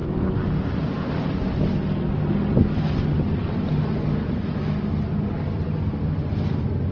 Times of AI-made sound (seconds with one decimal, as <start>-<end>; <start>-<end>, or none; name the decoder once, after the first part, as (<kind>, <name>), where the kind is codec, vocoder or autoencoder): none